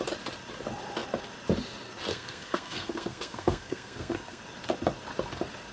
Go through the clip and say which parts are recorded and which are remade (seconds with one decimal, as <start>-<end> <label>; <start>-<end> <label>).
0.0-2.1 recorded; 2.1-4.4 remade; 4.4-5.7 recorded